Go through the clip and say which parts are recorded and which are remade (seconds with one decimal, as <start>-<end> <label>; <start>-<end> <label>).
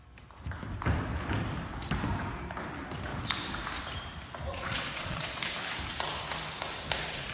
0.0-4.5 recorded; 4.5-5.4 remade; 5.4-7.3 recorded